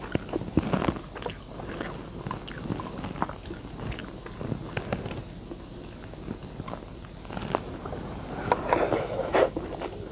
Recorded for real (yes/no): yes